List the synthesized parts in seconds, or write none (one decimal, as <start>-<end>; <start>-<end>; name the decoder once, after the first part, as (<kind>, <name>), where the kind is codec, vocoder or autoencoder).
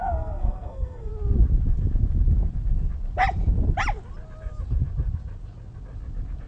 0.0-1.1 (codec, SNAC)